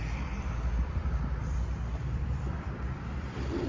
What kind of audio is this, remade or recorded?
remade